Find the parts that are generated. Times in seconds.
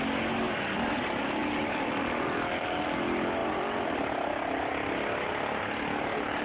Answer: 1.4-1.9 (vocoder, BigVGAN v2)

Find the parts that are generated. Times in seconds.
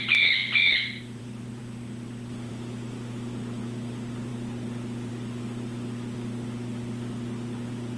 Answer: none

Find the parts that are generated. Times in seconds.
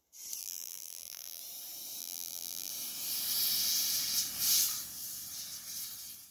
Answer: 0.4-1.4 (vocoder, BigVGAN v2); 2.0-2.7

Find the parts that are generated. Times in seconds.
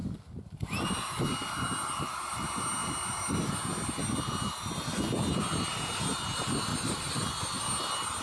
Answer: 2.8-3.3 (vocoder, BigVGAN v2); 6.7-7.6